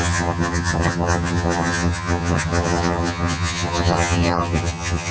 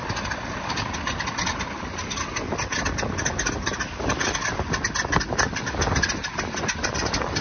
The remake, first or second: first